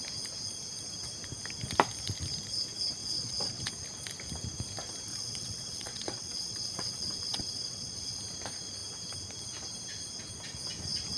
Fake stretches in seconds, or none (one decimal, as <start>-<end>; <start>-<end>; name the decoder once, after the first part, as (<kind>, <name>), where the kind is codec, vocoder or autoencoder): 3.0-3.7 (vocoder, WaveNeXt); 5.1-8.2